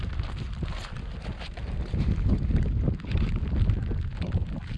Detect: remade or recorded recorded